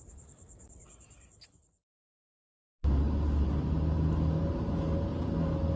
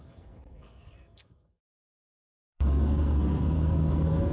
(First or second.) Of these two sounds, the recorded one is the first